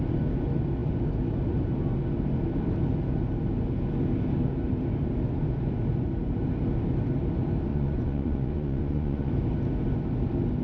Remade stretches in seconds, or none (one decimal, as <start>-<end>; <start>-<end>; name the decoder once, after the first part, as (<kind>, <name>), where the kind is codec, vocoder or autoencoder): 7.7-9.3 (vocoder, Vocos)